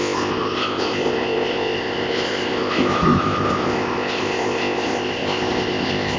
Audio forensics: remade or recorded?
remade